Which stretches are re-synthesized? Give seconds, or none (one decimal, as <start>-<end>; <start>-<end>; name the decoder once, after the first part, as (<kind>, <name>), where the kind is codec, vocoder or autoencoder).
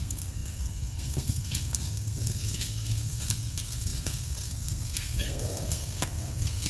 0.0-6.7 (codec, SNAC)